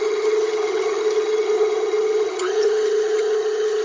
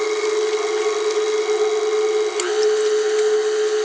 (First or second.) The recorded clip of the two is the second